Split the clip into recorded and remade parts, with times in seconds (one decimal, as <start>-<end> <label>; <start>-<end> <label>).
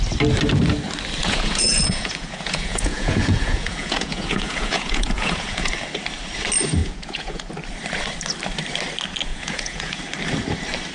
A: 0.0-1.2 recorded; 1.2-5.7 remade; 5.7-6.8 recorded; 6.8-7.5 remade; 7.5-9.3 recorded; 9.3-10.0 remade; 10.0-10.9 recorded